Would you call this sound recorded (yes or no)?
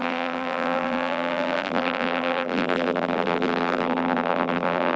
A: no